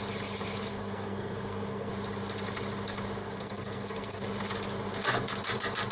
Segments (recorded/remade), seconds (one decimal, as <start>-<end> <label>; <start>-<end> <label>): 0.0-0.7 recorded; 0.7-1.9 remade; 1.9-3.2 recorded; 3.2-4.2 remade; 4.2-5.9 recorded